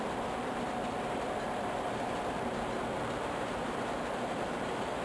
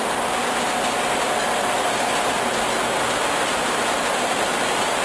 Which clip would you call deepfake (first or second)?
first